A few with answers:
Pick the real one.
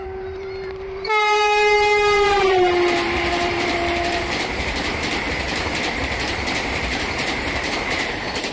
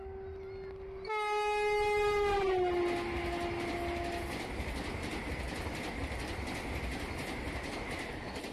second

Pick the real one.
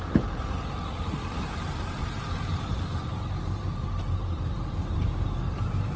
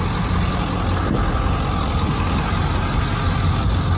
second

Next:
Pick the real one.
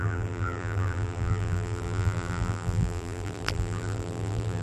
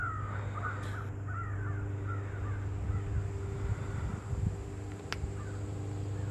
second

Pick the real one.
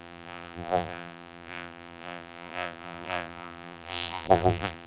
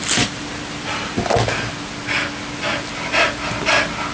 second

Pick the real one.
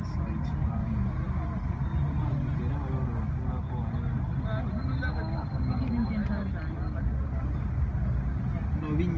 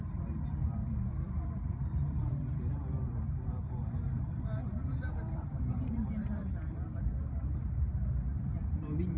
first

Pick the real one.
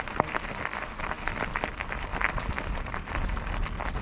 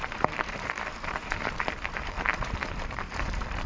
first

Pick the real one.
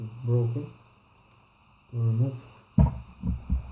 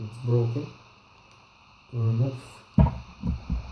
first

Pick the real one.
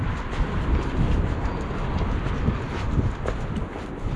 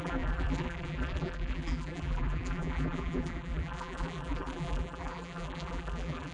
first